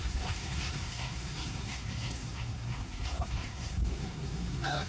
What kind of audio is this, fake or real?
fake